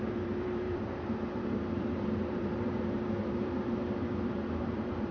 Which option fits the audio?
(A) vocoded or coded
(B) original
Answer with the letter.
A